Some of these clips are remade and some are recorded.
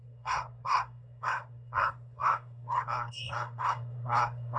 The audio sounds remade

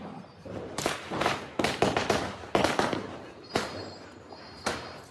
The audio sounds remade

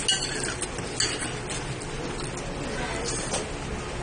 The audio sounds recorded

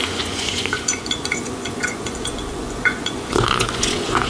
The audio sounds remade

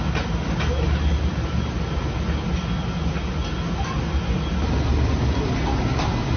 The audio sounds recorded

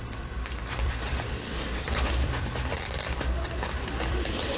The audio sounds remade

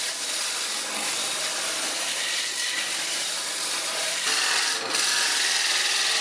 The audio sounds remade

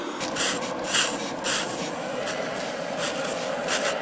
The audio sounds recorded